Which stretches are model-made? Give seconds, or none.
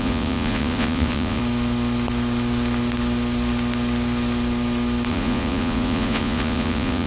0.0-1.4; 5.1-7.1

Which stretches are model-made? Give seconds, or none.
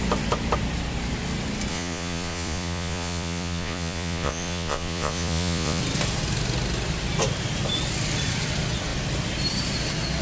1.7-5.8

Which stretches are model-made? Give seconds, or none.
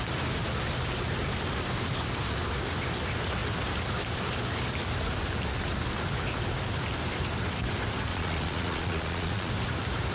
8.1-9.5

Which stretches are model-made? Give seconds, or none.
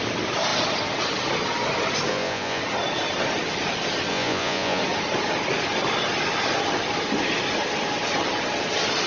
2.1-2.6; 4.1-4.8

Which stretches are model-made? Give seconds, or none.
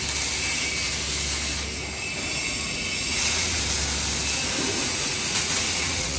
2.4-3.6; 4.8-6.2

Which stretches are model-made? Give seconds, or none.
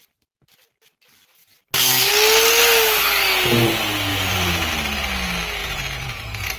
4.1-4.7; 5.6-6.6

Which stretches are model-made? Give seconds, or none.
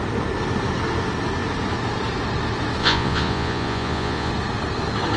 2.8-4.3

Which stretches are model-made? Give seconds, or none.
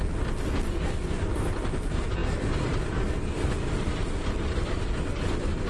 none